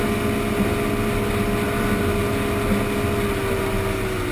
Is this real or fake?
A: real